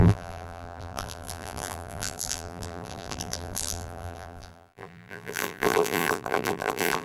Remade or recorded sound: remade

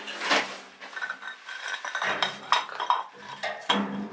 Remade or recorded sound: remade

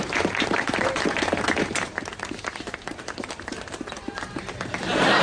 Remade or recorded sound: remade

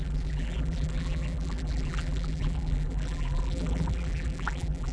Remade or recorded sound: remade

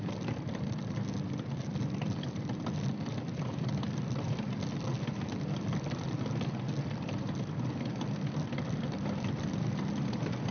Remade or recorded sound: remade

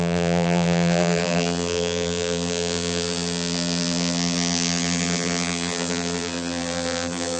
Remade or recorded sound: remade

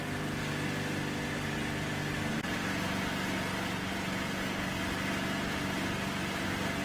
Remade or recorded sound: recorded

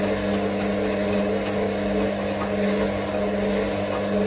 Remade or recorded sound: recorded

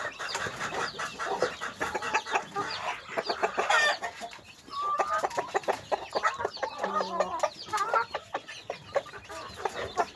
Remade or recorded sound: recorded